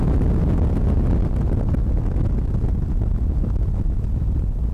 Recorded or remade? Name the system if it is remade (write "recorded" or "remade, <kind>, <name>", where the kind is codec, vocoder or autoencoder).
recorded